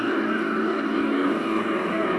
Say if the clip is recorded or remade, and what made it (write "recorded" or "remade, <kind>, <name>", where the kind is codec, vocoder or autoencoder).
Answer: remade, codec, DAC